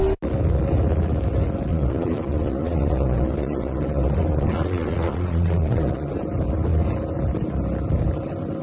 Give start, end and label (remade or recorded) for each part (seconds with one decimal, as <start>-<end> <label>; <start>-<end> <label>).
0.0-1.7 recorded; 1.7-6.1 remade; 6.1-8.6 recorded